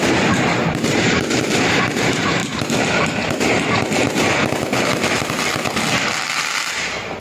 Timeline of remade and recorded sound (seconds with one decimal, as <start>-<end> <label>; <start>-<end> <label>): 0.0-2.4 remade; 2.4-6.7 recorded; 6.7-7.2 remade